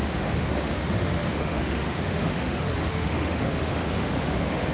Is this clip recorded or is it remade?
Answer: remade